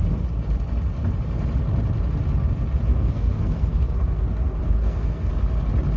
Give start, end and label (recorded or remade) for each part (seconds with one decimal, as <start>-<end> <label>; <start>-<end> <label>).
0.0-2.9 recorded; 2.9-5.3 remade; 5.3-6.0 recorded